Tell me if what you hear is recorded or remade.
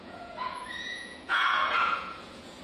remade